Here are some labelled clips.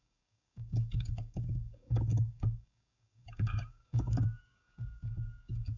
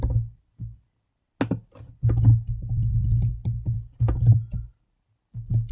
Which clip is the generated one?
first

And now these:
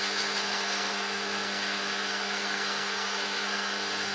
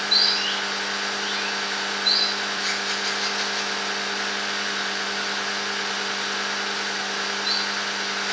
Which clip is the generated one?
first